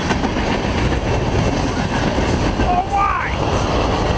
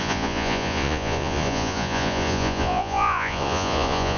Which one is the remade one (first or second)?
second